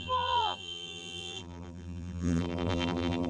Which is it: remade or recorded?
remade